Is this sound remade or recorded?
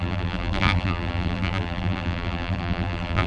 remade